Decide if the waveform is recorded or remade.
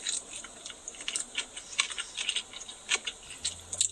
recorded